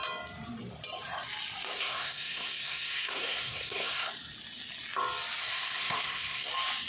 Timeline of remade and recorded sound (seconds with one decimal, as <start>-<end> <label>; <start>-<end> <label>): 0.0-1.7 recorded; 1.7-4.1 remade; 4.1-5.4 recorded; 5.4-6.5 remade; 6.5-6.9 recorded